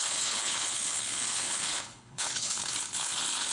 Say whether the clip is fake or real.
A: fake